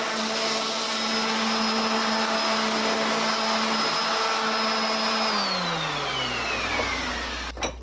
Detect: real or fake real